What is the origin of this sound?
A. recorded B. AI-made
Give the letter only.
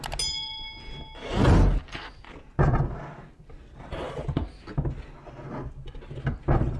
A